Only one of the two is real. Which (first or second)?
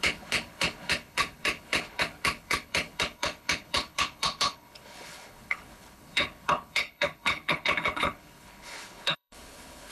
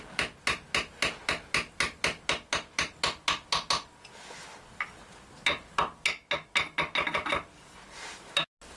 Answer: second